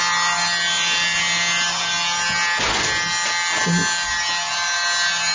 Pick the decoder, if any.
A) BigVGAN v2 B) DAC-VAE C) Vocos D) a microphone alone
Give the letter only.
D